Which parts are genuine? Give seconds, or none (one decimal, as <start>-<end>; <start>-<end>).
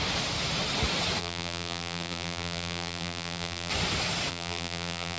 0.0-1.2; 3.7-4.3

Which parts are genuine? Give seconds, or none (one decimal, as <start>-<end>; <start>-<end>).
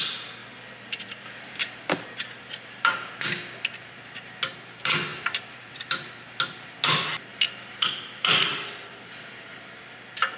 0.0-0.4; 3.2-5.1; 6.1-7.3; 8.9-10.4